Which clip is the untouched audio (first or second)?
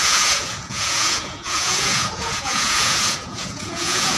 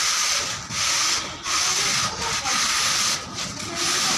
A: second